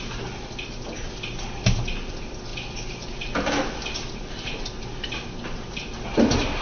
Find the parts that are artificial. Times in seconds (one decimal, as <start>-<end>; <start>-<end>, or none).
none